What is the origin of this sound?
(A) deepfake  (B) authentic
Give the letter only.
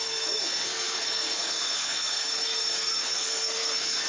A